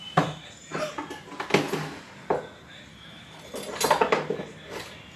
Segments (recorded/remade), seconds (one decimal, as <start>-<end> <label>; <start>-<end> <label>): 0.0-2.9 recorded; 2.9-3.4 remade; 3.4-5.2 recorded